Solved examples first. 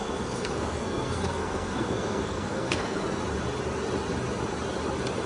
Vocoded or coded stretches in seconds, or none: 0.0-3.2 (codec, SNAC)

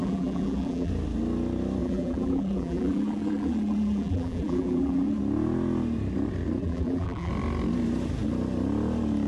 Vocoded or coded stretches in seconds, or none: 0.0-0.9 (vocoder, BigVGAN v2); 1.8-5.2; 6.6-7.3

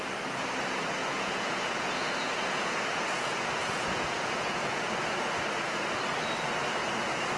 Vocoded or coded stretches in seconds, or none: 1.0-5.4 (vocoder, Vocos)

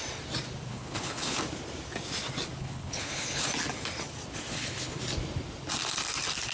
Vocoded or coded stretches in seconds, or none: 0.7-1.4 (codec, HILCodec); 2.6-3.5; 4.5-5.0

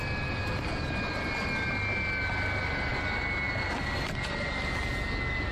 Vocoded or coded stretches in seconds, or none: none

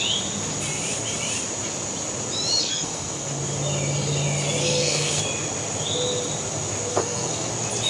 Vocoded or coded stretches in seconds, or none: 2.6-3.4 (codec, SNAC); 4.6-5.2; 6.9-7.5